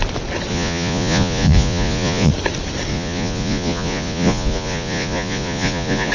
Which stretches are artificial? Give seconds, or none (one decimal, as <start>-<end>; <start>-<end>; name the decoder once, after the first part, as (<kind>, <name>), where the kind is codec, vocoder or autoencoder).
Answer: 0.5-2.3 (vocoder, Vocos); 2.9-6.1